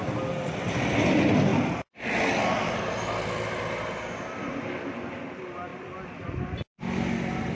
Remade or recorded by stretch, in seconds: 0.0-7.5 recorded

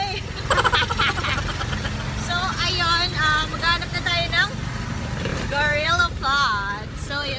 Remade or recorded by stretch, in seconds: 0.0-5.3 recorded; 5.3-6.0 remade; 6.0-7.4 recorded